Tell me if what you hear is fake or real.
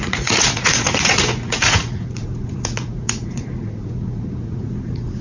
fake